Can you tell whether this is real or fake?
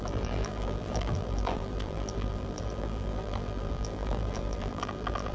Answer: fake